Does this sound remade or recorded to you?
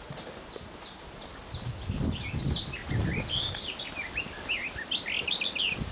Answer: recorded